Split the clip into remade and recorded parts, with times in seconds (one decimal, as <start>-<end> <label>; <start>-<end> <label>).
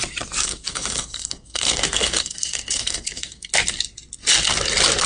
0.0-0.4 recorded; 0.4-3.5 remade; 3.5-5.1 recorded